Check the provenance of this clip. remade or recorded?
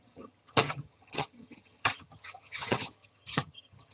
remade